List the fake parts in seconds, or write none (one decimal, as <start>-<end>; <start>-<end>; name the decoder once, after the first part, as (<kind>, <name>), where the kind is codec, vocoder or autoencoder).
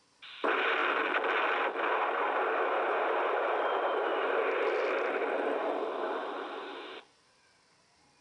0.0-0.8 (vocoder, BigVGAN v2); 1.6-4.1; 6.0-8.2